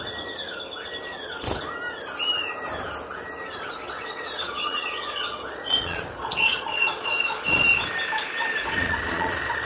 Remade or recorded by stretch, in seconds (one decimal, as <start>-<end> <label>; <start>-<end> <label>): 0.0-3.9 recorded; 3.9-7.7 remade; 7.7-8.7 recorded; 8.7-9.7 remade